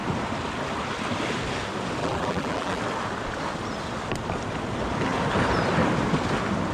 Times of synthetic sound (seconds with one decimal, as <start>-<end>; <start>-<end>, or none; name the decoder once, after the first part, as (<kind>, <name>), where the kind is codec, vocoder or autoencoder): 2.0-2.8 (vocoder, BigVGAN v2)